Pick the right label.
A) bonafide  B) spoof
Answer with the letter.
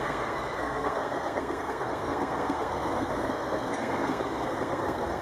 B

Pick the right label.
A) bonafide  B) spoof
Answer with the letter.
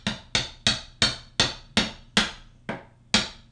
A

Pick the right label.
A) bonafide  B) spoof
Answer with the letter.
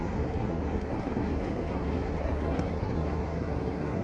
B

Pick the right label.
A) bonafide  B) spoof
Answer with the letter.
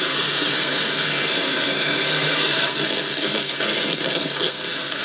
B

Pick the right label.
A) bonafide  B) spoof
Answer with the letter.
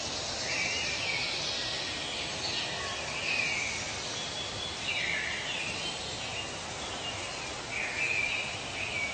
A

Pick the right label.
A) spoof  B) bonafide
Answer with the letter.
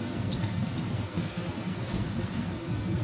A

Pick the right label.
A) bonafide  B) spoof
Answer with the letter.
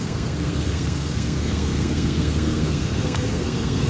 B